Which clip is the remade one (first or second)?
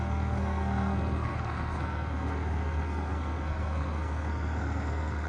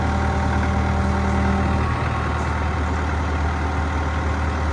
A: first